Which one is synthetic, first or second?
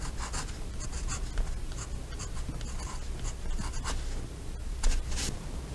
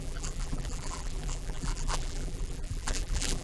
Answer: second